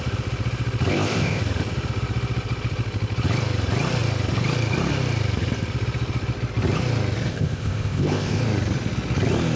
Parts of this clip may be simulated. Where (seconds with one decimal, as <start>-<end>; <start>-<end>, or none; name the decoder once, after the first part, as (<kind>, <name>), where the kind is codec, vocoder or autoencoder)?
0.9-1.4 (codec, ZipCodec); 7.3-8.4